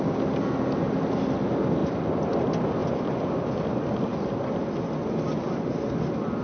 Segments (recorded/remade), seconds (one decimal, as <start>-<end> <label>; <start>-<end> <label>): 0.0-6.4 recorded